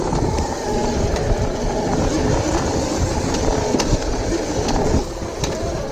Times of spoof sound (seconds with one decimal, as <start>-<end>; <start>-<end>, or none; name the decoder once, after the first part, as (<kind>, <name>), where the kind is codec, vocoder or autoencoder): none